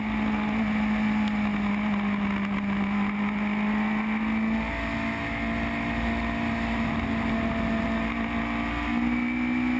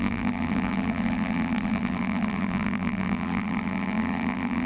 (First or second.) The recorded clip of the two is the first